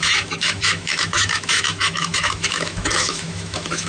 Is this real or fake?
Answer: fake